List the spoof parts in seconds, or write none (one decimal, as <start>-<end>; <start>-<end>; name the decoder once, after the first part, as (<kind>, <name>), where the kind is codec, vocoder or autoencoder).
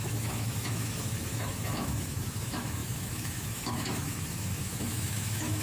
0.0-5.6 (autoencoder, DAC-VAE)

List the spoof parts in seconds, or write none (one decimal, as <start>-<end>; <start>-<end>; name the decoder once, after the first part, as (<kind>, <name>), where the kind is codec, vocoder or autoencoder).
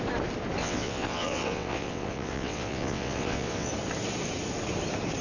0.6-3.7 (vocoder, WaveNeXt)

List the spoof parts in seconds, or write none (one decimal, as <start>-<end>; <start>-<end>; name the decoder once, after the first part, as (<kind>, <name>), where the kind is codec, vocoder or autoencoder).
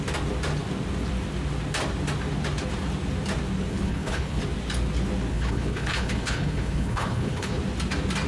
3.7-4.4 (codec, HILCodec); 5.3-7.6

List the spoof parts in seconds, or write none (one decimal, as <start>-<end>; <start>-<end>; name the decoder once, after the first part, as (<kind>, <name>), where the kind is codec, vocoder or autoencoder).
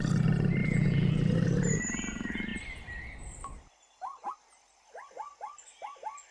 0.6-1.1 (vocoder, Vocos)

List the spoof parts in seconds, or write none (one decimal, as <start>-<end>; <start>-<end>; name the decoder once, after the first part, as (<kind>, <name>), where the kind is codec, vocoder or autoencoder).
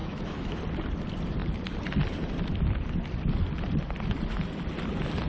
0.0-0.6 (autoencoder, DAC-VAE)